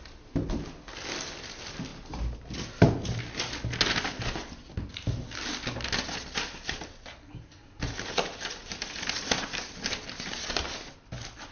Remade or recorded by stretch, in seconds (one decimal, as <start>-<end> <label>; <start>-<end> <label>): 0.0-11.5 recorded